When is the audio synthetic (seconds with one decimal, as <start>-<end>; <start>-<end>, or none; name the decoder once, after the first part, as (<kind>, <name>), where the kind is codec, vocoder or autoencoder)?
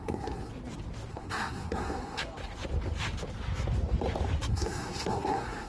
0.0-0.5 (codec, SNAC); 1.1-2.2; 4.5-5.7